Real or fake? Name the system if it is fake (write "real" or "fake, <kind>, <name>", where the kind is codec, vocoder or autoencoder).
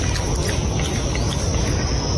real